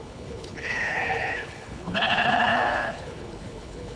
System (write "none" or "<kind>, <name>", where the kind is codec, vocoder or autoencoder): codec, HILCodec